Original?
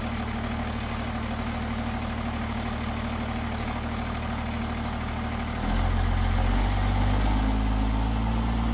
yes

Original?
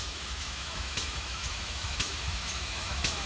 no